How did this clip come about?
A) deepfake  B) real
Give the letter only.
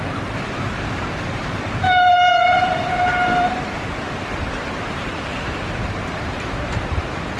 A